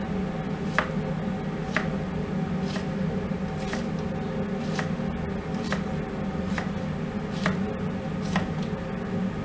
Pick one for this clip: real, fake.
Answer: real